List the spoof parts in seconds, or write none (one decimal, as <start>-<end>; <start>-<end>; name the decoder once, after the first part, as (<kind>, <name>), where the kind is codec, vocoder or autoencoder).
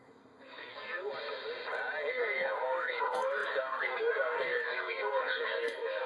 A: 0.0-1.1 (codec, SNAC); 2.1-6.1